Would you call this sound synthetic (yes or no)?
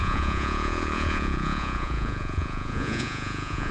yes